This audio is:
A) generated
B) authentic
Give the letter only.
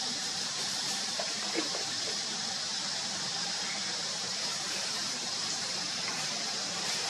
A